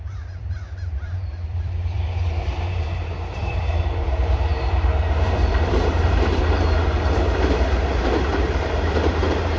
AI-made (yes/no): yes